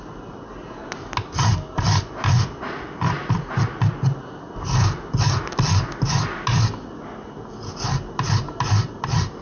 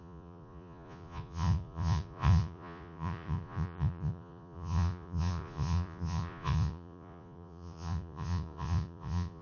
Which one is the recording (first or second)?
first